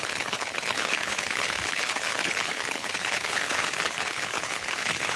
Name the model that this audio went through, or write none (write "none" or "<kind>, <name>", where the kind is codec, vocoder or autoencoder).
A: codec, HILCodec